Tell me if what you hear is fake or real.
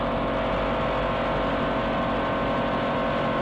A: real